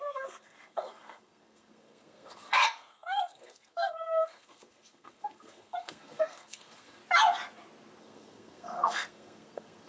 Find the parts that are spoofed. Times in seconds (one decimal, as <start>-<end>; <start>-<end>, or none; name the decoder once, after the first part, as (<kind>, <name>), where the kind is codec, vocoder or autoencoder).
0.0-7.0 (codec, SNAC); 8.0-9.9